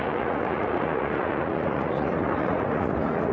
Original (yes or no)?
no